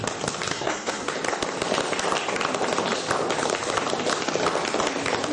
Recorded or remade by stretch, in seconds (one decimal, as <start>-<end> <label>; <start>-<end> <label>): 0.0-0.5 recorded; 0.5-1.1 remade; 1.1-5.3 recorded